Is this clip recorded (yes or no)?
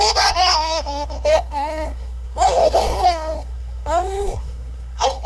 no